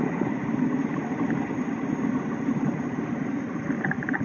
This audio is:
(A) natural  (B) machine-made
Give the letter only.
A